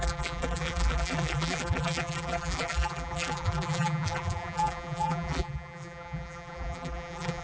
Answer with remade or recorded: remade